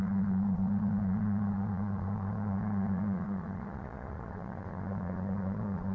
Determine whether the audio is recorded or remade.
remade